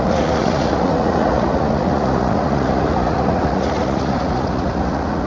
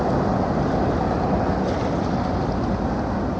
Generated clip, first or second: first